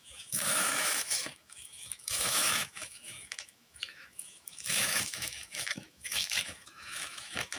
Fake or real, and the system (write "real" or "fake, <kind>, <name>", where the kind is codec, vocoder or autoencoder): fake, autoencoder, DAC-VAE